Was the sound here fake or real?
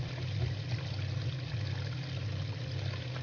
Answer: real